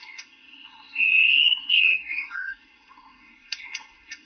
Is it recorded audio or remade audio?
remade